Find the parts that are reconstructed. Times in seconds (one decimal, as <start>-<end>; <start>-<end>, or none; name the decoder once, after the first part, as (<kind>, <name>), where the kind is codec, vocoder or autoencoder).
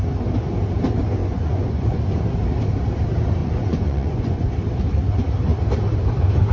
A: 1.2-2.0 (vocoder, Vocos); 3.4-4.5